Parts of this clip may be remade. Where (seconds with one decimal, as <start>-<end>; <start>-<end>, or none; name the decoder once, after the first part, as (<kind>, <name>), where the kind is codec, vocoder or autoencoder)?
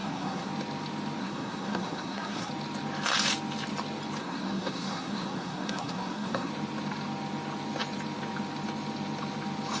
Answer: 0.0-0.5 (codec, SNAC); 1.2-2.5; 4.2-6.5